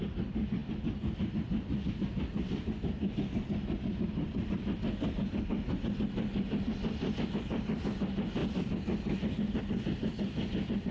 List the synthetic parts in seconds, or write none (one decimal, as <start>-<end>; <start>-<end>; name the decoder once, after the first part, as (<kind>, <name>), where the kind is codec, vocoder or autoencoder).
none